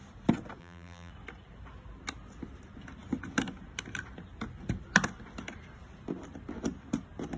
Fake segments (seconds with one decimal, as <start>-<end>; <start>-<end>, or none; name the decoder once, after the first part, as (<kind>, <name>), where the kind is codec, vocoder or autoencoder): 0.6-1.1 (vocoder, BigVGAN v2)